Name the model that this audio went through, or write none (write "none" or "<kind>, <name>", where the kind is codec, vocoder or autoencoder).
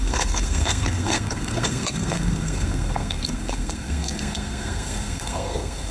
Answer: codec, SNAC